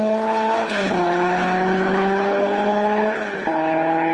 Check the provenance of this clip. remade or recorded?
remade